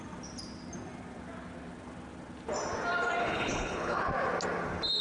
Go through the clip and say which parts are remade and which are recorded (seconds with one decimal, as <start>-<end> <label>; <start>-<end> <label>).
0.0-3.2 recorded; 3.2-4.1 remade; 4.1-5.0 recorded